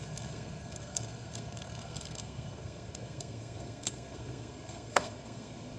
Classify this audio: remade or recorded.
remade